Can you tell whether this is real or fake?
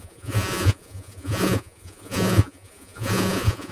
fake